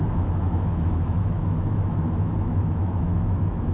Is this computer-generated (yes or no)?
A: yes